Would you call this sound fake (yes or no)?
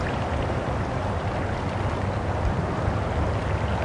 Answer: no